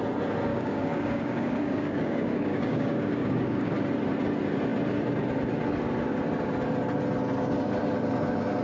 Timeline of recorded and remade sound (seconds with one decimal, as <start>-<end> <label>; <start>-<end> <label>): 0.0-0.5 recorded; 0.5-3.7 remade; 3.7-8.6 recorded